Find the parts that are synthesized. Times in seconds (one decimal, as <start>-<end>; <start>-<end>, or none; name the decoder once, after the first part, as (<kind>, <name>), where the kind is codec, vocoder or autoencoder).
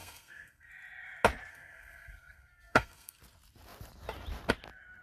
0.0-0.7 (codec, SNAC); 1.5-3.2